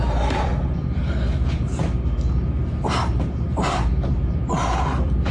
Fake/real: fake